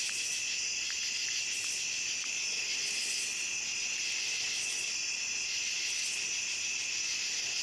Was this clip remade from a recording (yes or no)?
no